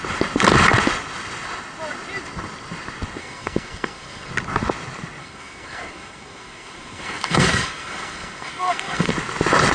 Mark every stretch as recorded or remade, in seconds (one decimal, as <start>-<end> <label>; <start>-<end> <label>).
0.0-3.2 recorded; 3.2-4.3 remade; 4.3-5.2 recorded; 5.2-9.1 remade; 9.1-9.7 recorded